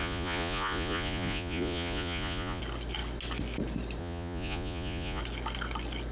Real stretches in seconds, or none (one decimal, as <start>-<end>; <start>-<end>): 2.6-4.0; 5.2-6.1